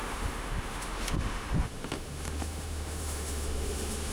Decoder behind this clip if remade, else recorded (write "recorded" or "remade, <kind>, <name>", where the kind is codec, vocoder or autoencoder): remade, autoencoder, DAC-VAE